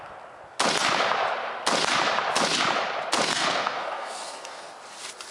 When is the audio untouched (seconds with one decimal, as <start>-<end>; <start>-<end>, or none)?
0.0-3.3; 4.7-5.3